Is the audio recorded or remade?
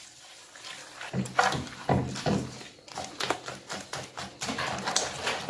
recorded